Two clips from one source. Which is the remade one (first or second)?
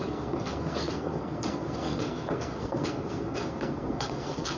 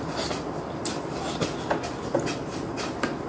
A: first